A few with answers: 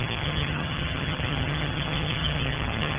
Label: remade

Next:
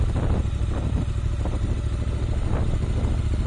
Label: recorded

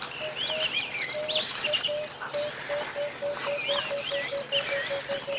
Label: recorded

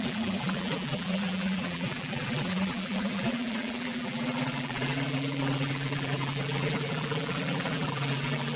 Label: remade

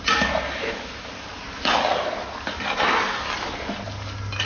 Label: recorded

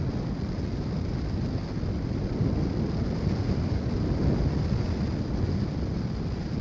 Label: recorded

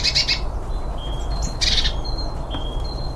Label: recorded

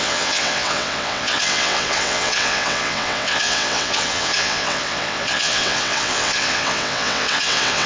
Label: remade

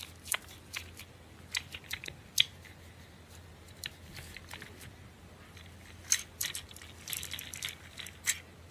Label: recorded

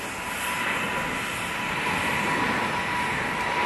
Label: recorded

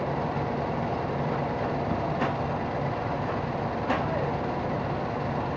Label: recorded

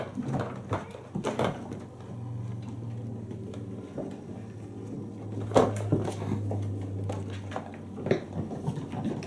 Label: recorded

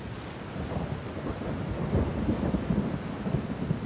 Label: recorded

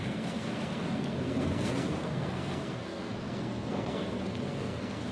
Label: remade